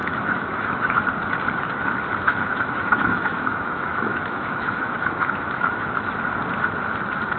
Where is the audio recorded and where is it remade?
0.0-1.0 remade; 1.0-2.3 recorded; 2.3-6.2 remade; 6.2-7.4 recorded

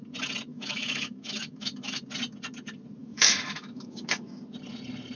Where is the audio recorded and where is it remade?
0.0-0.5 recorded; 0.5-2.0 remade; 2.0-3.0 recorded; 3.0-4.4 remade; 4.4-5.2 recorded

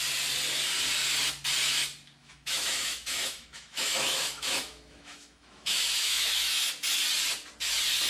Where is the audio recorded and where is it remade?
0.0-2.2 recorded; 2.2-6.6 remade; 6.6-8.1 recorded

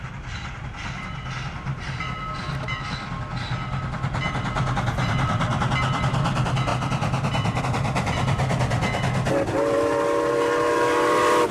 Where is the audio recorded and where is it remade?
0.0-11.5 recorded

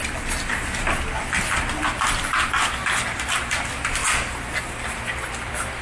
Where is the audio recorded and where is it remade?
0.0-5.8 recorded

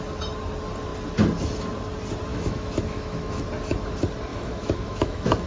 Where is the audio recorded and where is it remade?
0.0-2.3 recorded; 2.3-3.4 remade; 3.4-4.3 recorded; 4.3-5.5 remade

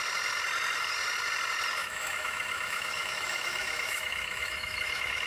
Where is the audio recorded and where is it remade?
0.0-1.8 recorded; 1.8-5.3 remade